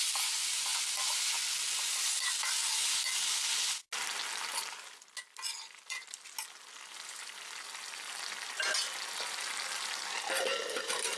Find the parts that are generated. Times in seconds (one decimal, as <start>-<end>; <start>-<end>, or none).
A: none